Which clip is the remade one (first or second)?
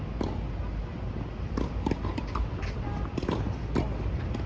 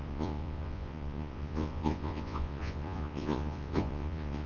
second